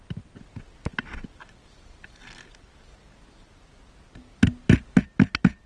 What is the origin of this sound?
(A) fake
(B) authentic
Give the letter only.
B